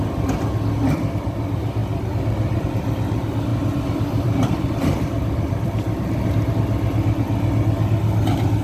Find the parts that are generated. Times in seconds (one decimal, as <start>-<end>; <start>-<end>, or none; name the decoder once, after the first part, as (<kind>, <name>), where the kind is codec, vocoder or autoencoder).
3.5-6.5 (vocoder, BigVGAN v2)